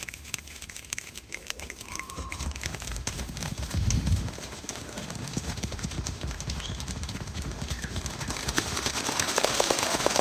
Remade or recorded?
remade